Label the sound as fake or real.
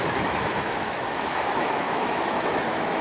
fake